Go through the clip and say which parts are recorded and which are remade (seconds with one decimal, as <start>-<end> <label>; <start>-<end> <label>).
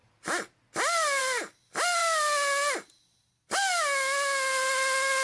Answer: 0.0-5.2 recorded